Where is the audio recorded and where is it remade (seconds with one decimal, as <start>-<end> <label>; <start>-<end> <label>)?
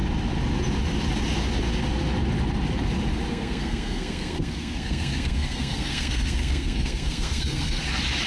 0.0-3.3 recorded; 3.3-7.8 remade; 7.8-8.3 recorded